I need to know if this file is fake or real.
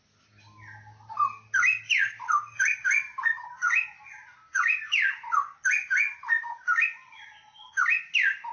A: real